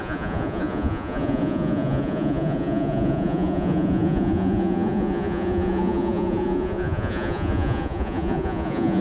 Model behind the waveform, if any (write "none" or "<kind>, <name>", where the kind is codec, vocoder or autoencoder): vocoder, Vocos